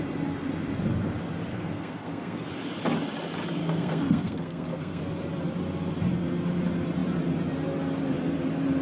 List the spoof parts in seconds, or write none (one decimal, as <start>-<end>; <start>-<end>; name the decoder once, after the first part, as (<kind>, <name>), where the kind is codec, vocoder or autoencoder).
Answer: 1.5-2.5 (codec, SNAC); 3.6-5.0